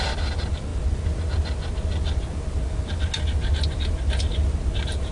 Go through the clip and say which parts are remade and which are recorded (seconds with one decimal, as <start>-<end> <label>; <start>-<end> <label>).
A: 0.0-5.1 recorded